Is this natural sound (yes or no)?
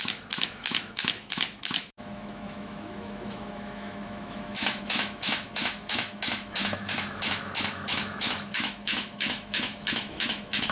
no